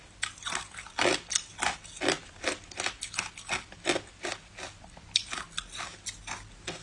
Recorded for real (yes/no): yes